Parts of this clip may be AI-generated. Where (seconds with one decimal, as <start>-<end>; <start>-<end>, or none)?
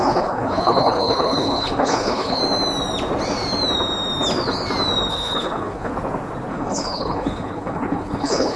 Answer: 0.0-2.4; 5.1-5.9; 6.5-8.6